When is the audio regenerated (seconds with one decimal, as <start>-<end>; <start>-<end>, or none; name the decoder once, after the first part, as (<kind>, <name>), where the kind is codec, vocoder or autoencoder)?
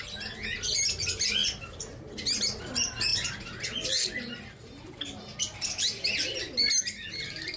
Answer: none